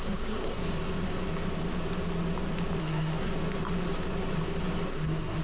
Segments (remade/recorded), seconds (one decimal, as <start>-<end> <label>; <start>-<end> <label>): 0.0-0.6 remade; 0.6-2.8 recorded; 2.8-3.3 remade; 3.3-4.9 recorded; 4.9-5.4 remade